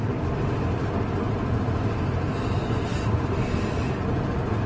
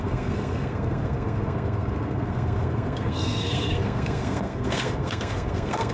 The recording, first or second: first